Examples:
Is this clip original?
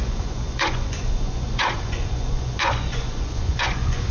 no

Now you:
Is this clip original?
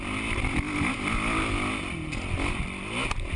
yes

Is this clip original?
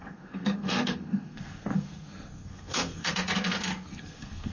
no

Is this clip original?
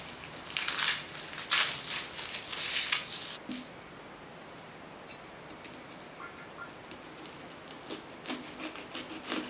yes